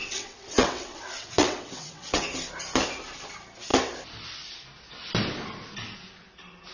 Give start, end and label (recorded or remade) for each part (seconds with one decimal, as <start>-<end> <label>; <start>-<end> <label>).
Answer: 0.0-2.2 remade; 2.2-6.7 recorded